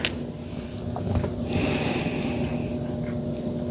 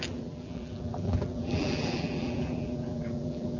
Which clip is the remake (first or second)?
second